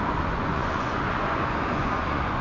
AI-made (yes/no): yes